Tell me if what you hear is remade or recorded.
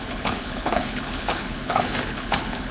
remade